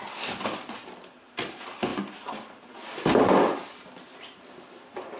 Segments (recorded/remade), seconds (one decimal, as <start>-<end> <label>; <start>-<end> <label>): 0.0-5.2 recorded